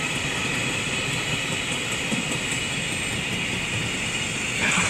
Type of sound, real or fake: real